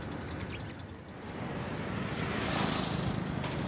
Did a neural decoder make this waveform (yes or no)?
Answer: no